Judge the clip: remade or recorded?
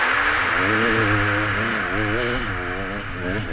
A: recorded